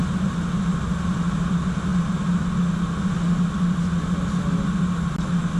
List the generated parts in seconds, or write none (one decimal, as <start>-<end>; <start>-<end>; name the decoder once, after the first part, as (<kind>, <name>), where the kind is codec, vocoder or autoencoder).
none

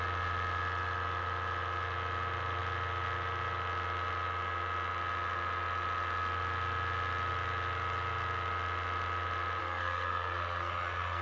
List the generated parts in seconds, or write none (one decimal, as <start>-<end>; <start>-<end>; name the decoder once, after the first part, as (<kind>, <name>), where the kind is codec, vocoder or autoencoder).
9.6-11.2 (codec, SNAC)

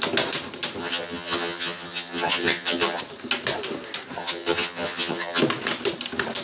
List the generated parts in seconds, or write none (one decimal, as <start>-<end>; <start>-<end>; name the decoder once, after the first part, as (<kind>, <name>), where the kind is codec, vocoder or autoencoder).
0.8-3.0 (vocoder, HiFi-GAN); 4.2-5.4

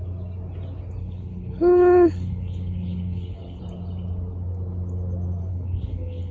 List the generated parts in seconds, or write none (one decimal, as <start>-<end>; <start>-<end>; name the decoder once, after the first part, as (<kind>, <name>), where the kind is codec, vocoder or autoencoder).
1.0-3.6 (codec, HILCodec); 5.5-6.3

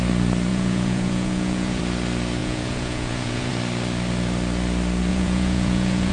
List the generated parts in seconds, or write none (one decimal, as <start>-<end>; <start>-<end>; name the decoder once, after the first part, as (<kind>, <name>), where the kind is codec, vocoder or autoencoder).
0.5-1.8 (vocoder, Vocos); 2.4-3.5; 5.1-6.1

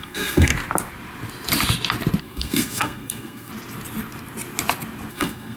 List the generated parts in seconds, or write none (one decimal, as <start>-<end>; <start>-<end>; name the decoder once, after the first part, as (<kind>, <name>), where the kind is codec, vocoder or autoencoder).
0.0-0.5 (codec, SNAC); 2.2-3.5; 5.1-5.6